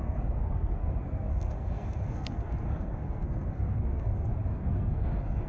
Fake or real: fake